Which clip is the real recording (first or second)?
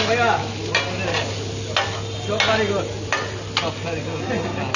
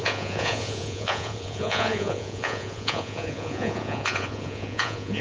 first